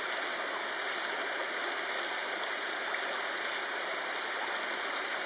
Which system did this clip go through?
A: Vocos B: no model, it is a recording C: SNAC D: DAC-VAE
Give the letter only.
B